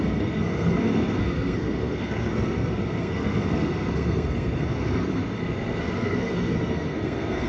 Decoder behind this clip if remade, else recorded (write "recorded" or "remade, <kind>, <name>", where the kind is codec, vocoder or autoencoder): remade, codec, SNAC